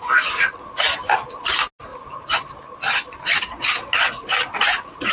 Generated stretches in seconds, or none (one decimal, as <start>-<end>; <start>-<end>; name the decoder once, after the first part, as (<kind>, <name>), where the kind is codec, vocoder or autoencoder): none